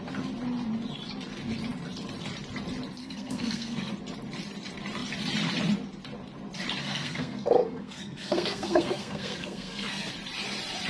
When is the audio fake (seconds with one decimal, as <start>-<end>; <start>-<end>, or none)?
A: 3.0-3.9; 6.8-10.1